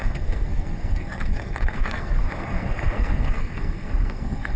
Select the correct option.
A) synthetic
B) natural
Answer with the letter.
A